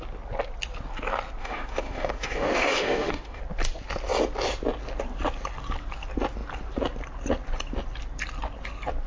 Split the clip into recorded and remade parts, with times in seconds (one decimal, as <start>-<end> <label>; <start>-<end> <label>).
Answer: 0.0-1.4 recorded; 1.4-3.4 remade; 3.4-9.1 recorded